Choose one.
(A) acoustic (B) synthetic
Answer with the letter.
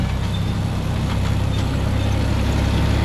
A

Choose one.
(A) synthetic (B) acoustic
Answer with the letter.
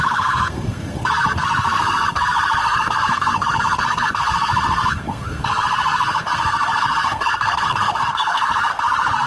A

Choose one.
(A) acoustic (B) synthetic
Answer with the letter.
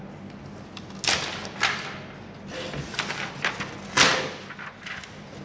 A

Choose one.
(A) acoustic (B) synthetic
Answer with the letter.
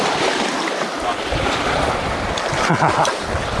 A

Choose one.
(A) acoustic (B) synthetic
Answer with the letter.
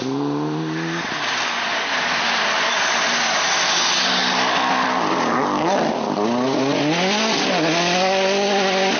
A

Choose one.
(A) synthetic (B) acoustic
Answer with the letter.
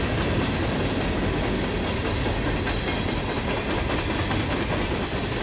B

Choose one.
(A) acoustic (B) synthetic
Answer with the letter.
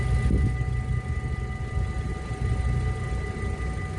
A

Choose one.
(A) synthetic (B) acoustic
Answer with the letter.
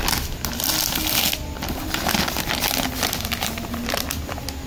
B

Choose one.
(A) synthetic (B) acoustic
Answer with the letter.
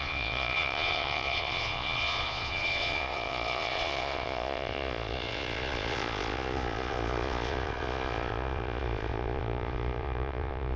A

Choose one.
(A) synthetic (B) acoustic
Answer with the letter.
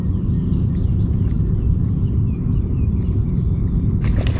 B